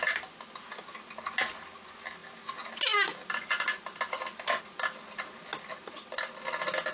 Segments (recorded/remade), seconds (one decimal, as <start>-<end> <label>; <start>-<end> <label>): 0.0-6.9 recorded